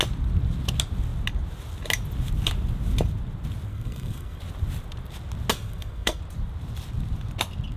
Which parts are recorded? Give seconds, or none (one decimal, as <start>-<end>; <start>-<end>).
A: 0.0-3.7; 4.4-5.5; 6.2-7.8